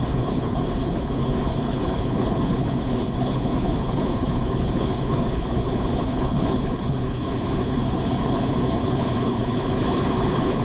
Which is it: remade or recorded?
remade